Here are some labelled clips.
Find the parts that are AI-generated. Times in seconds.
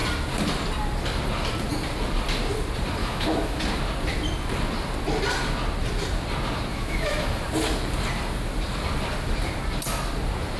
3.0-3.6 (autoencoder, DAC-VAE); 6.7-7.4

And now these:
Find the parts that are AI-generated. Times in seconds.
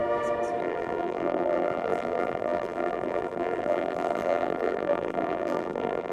0.6-6.1 (vocoder, BigVGAN v2)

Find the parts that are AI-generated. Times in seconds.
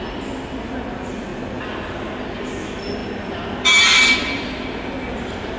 none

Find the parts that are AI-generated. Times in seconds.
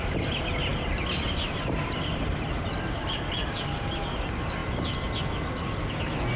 none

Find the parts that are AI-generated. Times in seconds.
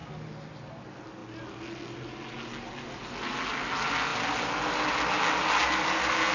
none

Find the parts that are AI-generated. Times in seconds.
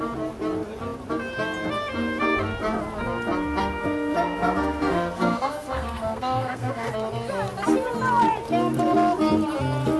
3.6-6.9 (codec, SNAC)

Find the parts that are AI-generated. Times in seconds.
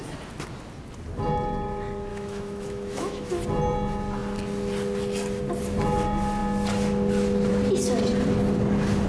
2.1-3.3 (autoencoder, DAC-VAE)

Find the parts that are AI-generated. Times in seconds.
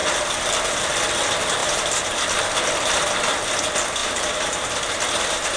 4.0-4.6 (vocoder, BigVGAN v2)